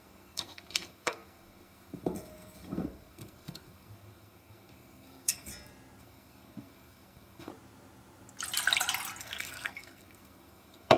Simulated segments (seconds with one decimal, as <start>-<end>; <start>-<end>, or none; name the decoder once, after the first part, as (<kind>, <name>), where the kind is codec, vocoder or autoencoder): 0.0-5.5 (codec, SNAC); 6.0-7.5; 9.2-11.0